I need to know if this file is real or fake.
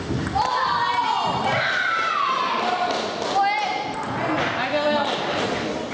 real